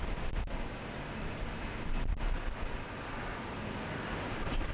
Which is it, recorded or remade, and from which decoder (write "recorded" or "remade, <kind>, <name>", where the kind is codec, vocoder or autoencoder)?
recorded